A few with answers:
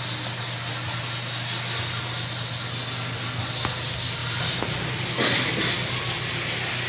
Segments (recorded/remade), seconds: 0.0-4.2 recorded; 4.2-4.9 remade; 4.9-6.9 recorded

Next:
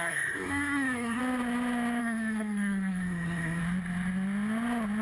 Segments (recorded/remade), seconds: 0.0-1.2 remade; 1.2-2.0 recorded; 2.0-3.6 remade; 3.6-5.0 recorded

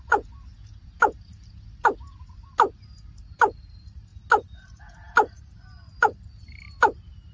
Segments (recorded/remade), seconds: 0.0-7.3 recorded